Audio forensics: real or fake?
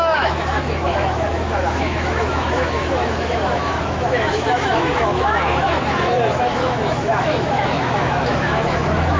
fake